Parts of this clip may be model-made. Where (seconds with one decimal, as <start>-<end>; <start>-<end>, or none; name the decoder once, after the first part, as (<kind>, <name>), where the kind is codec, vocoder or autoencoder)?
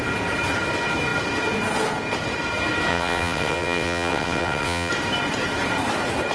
2.9-4.9 (vocoder, WaveNeXt)